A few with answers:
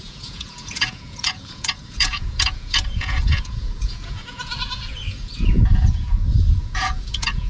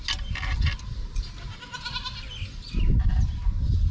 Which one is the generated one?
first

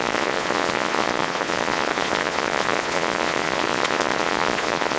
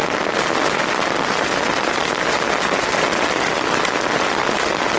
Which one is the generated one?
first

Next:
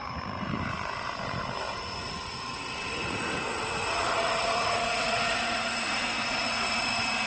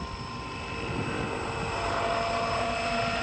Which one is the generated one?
first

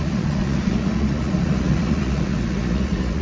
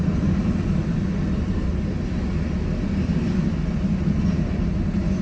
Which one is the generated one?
first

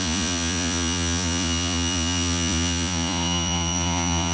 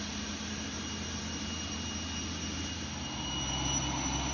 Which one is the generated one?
first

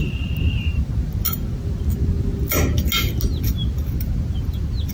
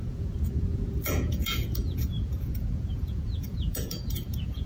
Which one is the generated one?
second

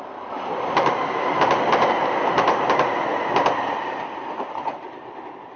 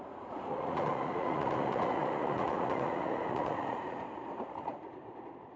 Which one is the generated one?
second